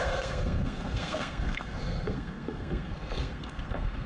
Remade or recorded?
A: remade